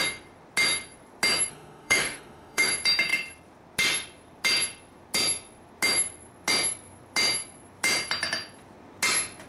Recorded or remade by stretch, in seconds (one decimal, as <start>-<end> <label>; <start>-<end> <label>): 0.0-1.5 recorded; 1.5-2.7 remade; 2.7-9.5 recorded